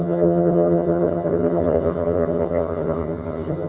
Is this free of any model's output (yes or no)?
no